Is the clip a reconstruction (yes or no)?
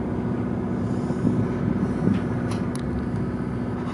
no